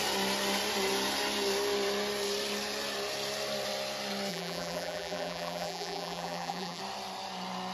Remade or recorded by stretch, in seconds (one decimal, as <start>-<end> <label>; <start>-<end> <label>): 0.0-4.3 recorded; 4.3-6.8 remade; 6.8-7.7 recorded